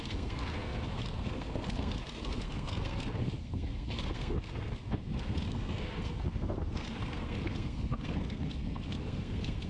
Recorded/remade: remade